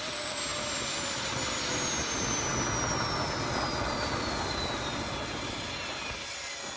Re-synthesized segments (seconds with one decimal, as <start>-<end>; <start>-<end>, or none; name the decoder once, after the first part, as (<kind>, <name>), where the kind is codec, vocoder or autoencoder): none